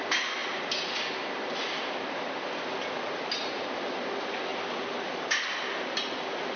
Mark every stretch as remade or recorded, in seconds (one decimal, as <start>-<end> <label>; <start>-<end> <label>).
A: 0.0-4.5 recorded; 4.5-6.1 remade; 6.1-6.6 recorded

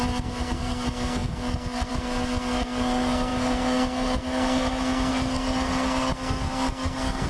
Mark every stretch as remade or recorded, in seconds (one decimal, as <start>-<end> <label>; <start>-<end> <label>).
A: 0.0-7.3 remade

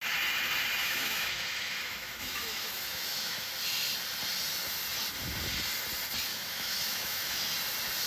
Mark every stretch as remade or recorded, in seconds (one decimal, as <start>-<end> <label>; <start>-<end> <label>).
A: 0.0-0.8 recorded; 0.8-3.5 remade; 3.5-6.3 recorded; 6.3-7.4 remade; 7.4-8.1 recorded

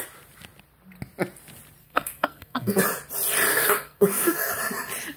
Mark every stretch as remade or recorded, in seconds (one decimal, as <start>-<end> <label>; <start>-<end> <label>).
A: 0.0-1.8 recorded; 1.8-2.8 remade; 2.8-3.5 recorded; 3.5-4.5 remade; 4.5-5.2 recorded